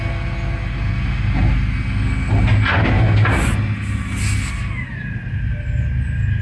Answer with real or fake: real